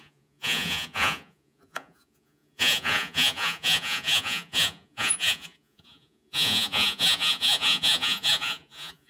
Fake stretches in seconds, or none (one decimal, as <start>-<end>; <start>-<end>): 0.0-9.1